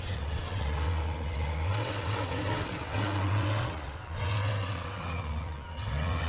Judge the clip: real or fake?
fake